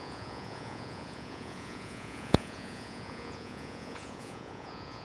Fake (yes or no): yes